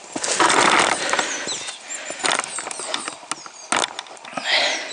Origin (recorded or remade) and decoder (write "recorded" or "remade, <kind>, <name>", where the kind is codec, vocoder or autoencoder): recorded